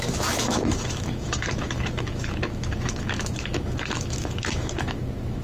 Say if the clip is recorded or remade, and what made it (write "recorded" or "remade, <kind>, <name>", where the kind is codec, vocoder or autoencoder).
remade, autoencoder, DAC-VAE